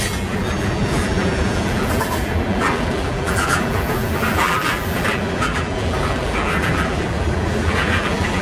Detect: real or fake fake